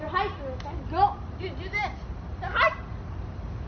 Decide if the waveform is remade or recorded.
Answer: recorded